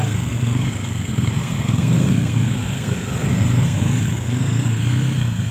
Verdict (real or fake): fake